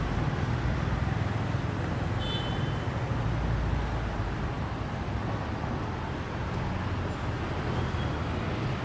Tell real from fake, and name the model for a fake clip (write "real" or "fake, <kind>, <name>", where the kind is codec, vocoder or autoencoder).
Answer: real